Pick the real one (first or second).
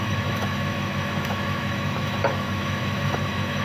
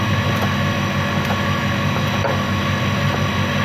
second